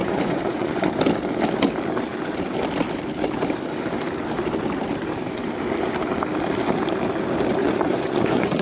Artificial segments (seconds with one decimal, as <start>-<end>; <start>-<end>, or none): 0.0-0.9; 7.6-8.6